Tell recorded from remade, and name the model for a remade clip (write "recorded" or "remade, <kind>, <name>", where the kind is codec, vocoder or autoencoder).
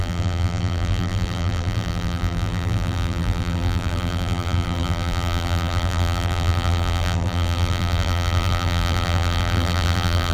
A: remade, vocoder, BigVGAN v2